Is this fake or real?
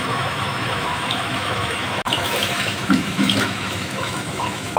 fake